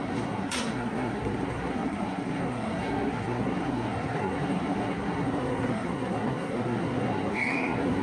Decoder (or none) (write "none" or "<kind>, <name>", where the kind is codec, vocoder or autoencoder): codec, SNAC